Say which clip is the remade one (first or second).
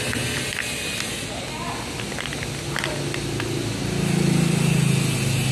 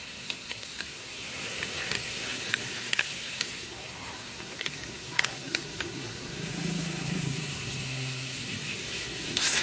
second